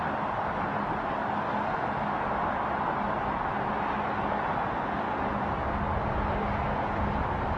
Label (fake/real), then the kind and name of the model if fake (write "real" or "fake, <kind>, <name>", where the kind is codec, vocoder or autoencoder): real